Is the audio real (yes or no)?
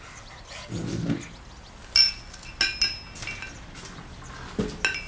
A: yes